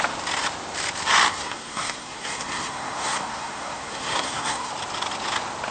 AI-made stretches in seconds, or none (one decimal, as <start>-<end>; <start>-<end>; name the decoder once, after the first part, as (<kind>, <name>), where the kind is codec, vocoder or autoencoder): 1.3-4.7 (codec, SNAC)